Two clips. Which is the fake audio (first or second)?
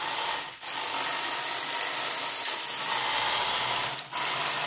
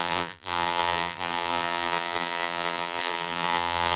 second